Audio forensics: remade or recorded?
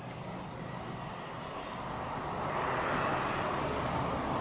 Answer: recorded